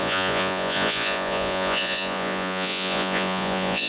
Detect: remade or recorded remade